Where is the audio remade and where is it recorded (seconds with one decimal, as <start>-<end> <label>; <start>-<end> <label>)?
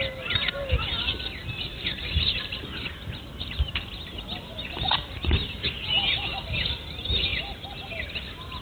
0.0-1.7 recorded; 1.7-2.6 remade; 2.6-8.6 recorded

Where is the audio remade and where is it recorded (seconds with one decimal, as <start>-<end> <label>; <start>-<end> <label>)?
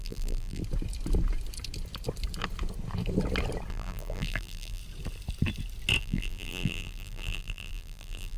0.0-0.6 remade; 0.6-3.7 recorded; 3.7-4.8 remade; 4.8-6.0 recorded; 6.0-8.4 remade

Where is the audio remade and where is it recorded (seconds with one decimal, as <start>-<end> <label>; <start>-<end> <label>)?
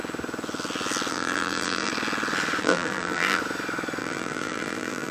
0.0-1.1 recorded; 1.1-1.9 remade; 1.9-2.6 recorded; 2.6-3.4 remade; 3.4-4.0 recorded; 4.0-5.1 remade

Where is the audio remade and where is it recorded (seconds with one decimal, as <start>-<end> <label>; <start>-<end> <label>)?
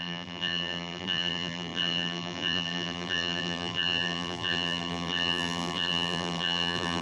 0.0-7.0 remade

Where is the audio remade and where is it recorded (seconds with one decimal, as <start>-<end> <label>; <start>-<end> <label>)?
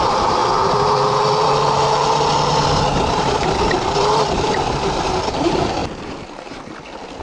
0.0-0.4 remade; 0.4-4.3 recorded; 4.3-5.8 remade; 5.8-7.2 recorded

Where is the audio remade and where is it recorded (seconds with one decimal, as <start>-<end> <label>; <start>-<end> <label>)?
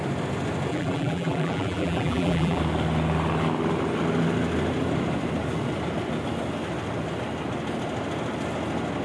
0.0-0.7 recorded; 0.7-2.6 remade; 2.6-9.0 recorded